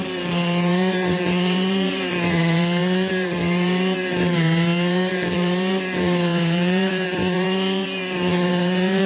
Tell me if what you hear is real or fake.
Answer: fake